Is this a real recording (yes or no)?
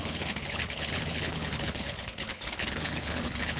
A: no